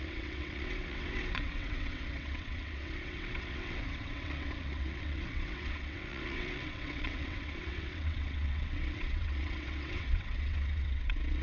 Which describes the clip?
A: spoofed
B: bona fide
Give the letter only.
A